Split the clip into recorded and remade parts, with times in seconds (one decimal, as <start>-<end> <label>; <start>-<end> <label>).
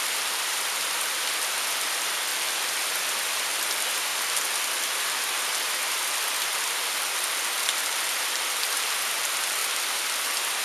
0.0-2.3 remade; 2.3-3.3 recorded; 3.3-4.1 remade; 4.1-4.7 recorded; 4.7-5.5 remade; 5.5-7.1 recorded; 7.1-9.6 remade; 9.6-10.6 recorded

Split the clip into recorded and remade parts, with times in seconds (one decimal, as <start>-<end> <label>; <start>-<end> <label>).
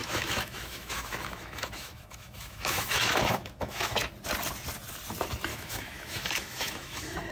0.0-4.1 remade; 4.1-5.5 recorded; 5.5-7.3 remade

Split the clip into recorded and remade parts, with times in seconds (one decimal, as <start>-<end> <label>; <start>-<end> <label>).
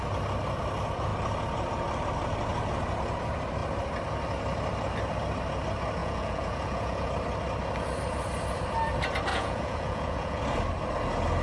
0.0-6.0 recorded; 6.0-7.1 remade; 7.1-9.3 recorded; 9.3-10.4 remade; 10.4-11.4 recorded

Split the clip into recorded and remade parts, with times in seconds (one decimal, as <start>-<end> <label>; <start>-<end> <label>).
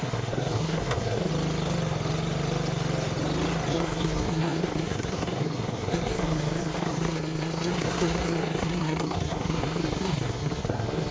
0.0-1.3 remade; 1.3-3.7 recorded; 3.7-11.1 remade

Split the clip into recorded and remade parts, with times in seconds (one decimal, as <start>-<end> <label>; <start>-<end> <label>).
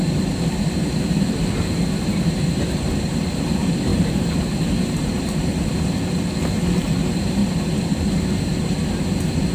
0.0-9.5 remade